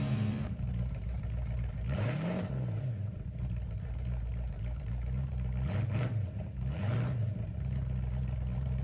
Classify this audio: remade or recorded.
remade